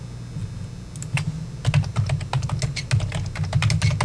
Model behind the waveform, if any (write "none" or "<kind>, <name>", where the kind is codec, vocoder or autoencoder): none